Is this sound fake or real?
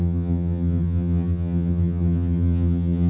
fake